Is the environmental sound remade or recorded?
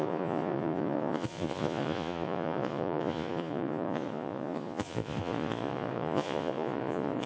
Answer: remade